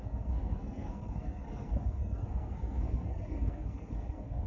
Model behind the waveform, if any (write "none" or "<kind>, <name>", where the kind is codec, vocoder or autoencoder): codec, SNAC